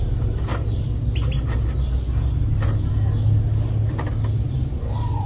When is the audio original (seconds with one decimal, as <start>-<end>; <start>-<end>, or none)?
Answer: 0.0-5.3